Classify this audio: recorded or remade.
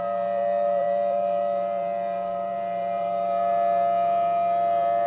remade